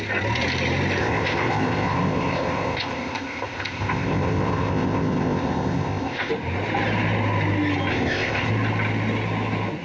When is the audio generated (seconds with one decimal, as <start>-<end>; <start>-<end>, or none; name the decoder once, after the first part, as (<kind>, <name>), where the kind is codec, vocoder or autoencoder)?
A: 1.0-6.3 (codec, ZipCodec); 7.9-8.5